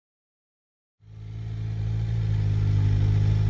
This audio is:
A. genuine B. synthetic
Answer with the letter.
A